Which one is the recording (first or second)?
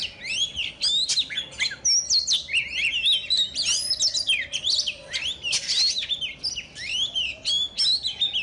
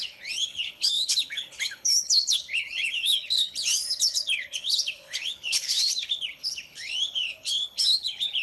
first